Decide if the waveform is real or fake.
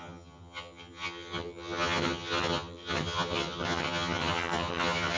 fake